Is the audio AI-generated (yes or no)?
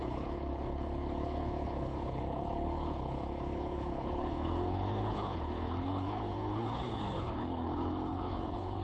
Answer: yes